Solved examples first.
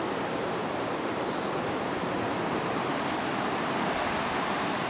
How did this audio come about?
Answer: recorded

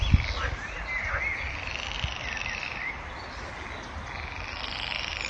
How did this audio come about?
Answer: recorded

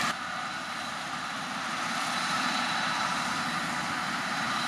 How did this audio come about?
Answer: remade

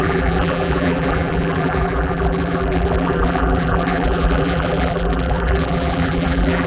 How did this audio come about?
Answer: remade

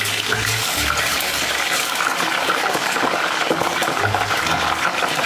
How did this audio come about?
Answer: remade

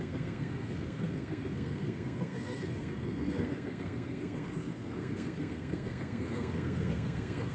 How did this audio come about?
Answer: remade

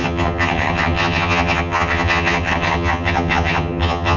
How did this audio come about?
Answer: remade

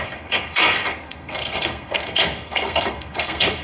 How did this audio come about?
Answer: remade